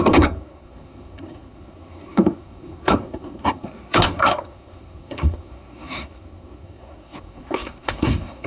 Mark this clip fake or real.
fake